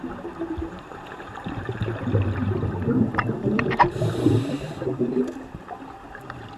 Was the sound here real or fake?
fake